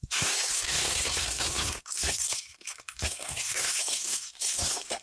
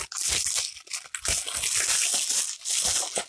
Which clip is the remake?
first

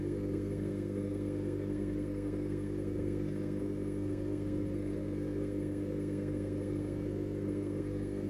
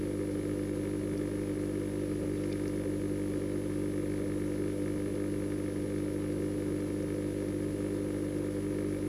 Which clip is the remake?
first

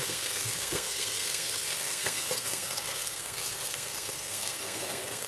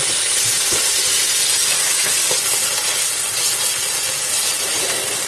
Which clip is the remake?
first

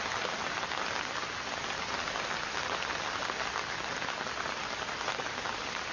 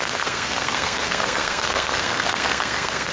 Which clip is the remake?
second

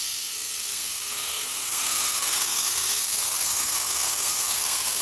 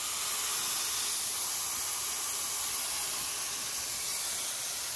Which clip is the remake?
first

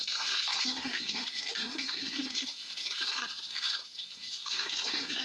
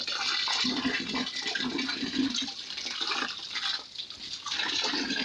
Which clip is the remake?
first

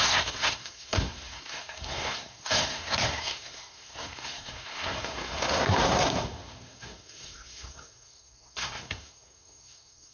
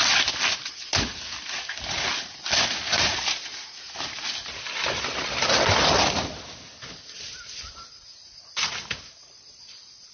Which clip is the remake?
first